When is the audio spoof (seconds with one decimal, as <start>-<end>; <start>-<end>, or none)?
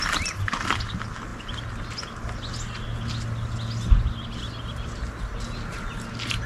none